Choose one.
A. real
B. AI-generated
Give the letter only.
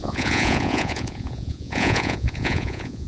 B